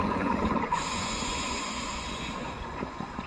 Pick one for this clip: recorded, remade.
remade